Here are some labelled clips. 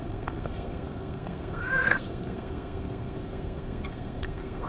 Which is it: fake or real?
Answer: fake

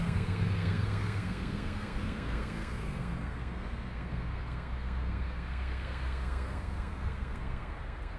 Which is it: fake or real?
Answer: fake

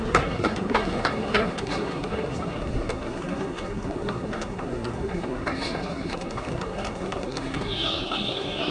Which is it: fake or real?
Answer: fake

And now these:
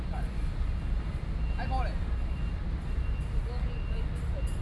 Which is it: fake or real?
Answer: real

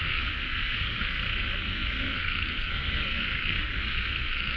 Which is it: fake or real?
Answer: fake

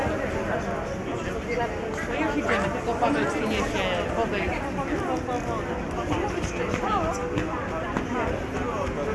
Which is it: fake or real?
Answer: real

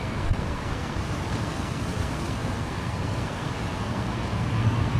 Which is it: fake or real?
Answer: fake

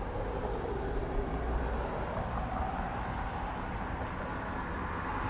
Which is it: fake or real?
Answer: real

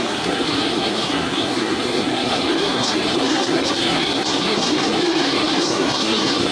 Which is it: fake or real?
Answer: fake